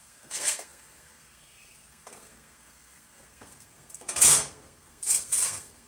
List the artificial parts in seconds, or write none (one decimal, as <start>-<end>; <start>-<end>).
0.0-5.9